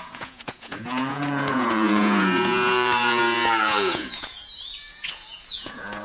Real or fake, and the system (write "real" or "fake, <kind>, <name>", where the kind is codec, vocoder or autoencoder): fake, vocoder, Vocos